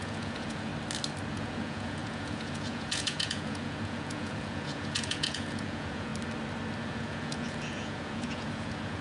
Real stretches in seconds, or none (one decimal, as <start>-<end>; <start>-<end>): 0.7-1.3; 6.1-6.8